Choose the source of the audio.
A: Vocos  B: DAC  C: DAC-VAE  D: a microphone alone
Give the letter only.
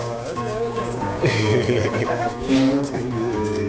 B